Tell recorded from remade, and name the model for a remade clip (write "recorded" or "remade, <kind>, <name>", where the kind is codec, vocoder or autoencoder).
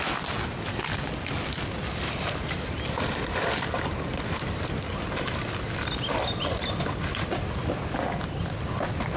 recorded